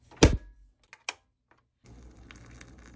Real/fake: real